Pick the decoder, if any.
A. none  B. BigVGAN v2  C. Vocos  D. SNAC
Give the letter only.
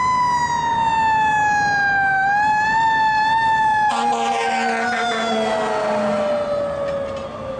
A